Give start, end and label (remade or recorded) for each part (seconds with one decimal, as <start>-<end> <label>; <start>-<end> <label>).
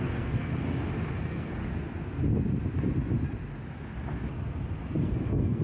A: 0.0-0.5 remade; 0.5-1.2 recorded; 1.2-1.6 remade; 1.6-5.0 recorded; 5.0-5.6 remade